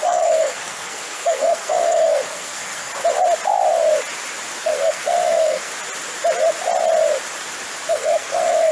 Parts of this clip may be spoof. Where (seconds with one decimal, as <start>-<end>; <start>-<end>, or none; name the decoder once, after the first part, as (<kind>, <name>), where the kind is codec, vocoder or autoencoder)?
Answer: 0.0-2.9 (codec, SNAC); 4.6-5.7; 7.9-8.7